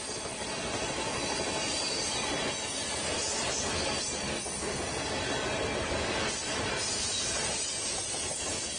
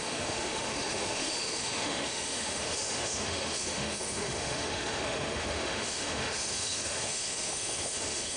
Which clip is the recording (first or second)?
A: first